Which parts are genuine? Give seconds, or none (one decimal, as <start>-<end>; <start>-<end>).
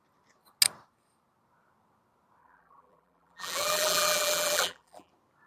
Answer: 0.0-2.4; 5.1-5.5